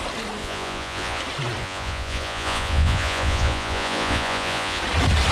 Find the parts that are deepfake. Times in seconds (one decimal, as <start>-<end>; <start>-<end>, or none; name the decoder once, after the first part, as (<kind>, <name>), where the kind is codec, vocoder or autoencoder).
0.4-1.2 (vocoder, Vocos); 1.6-4.8